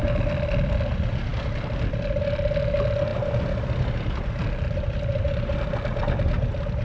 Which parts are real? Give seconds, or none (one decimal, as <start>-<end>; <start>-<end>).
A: 0.0-6.8